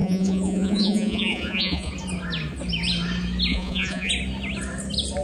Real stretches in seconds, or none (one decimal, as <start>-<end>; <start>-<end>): 1.9-3.5; 4.1-5.2